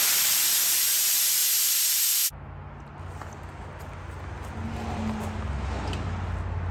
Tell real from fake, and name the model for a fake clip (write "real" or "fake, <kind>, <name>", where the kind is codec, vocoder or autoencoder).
real